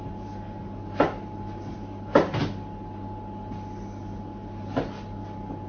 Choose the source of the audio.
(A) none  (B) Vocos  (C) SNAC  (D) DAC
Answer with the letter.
A